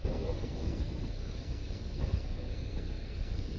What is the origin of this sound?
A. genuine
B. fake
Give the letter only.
B